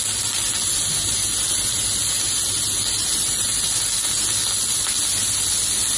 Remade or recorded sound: recorded